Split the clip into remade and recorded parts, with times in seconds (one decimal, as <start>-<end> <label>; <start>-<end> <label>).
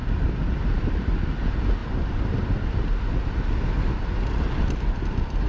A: 0.0-1.2 remade; 1.2-1.8 recorded; 1.8-3.9 remade; 3.9-5.5 recorded